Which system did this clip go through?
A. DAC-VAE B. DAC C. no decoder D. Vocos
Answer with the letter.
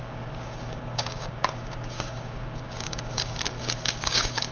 B